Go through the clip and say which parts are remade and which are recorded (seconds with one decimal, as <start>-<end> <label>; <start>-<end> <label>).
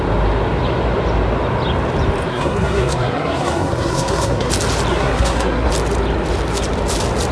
0.0-2.3 recorded; 2.3-4.5 remade; 4.5-4.9 recorded; 4.9-5.7 remade; 5.7-7.3 recorded